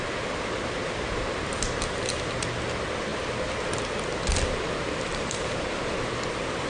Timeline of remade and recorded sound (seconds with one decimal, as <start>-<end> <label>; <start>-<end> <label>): 0.0-3.1 recorded; 3.1-3.8 remade; 3.8-5.1 recorded; 5.1-5.9 remade; 5.9-6.7 recorded